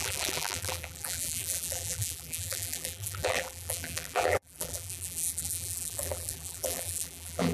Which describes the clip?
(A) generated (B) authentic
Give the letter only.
A